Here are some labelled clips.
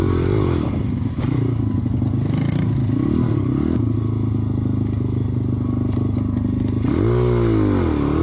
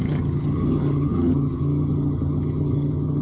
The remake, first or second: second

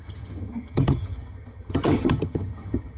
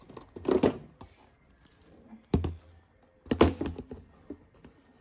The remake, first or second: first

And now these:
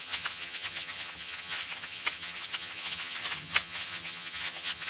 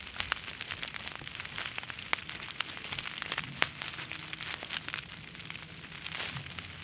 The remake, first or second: first